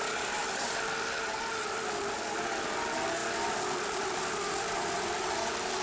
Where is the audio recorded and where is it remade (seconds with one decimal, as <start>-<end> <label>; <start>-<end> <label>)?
0.0-3.2 recorded; 3.2-5.2 remade; 5.2-5.8 recorded